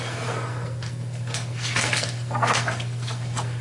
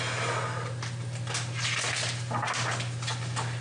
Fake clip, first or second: first